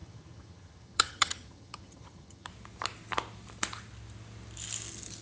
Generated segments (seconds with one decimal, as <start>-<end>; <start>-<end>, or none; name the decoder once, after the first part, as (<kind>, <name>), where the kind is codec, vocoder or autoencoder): 0.0-2.5 (vocoder, HiFi-GAN)